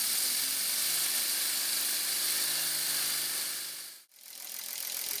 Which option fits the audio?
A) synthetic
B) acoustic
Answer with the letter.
B